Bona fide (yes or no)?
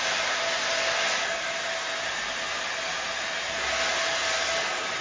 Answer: yes